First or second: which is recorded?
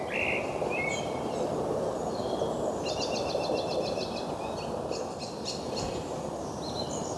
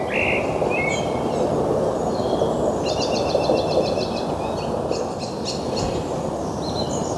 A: second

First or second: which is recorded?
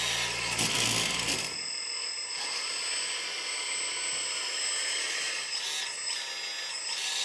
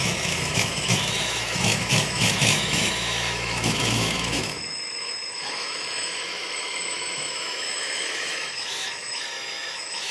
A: first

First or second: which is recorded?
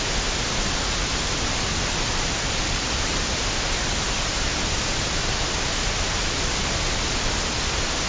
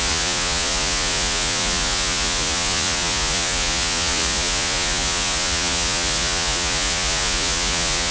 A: first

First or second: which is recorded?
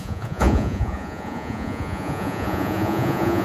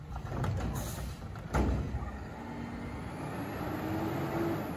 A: second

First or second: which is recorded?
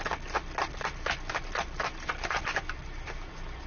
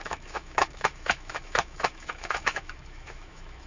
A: first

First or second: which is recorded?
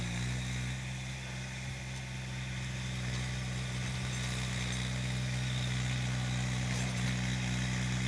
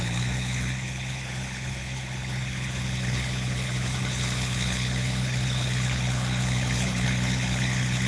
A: first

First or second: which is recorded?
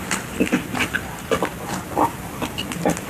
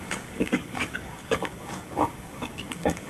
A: first